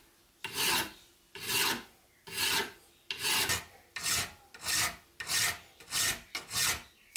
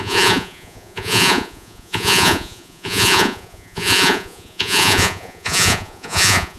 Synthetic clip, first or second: second